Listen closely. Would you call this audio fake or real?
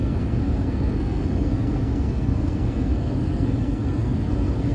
fake